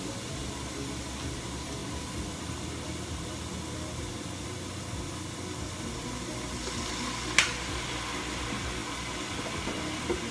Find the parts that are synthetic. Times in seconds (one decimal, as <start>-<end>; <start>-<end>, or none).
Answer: none